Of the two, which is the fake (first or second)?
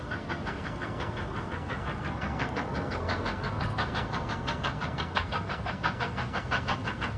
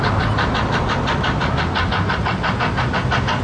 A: first